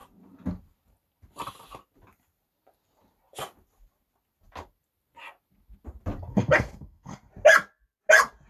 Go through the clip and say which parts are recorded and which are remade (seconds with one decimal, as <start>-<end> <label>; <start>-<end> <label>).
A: 0.0-6.3 recorded; 6.3-7.3 remade; 7.3-8.5 recorded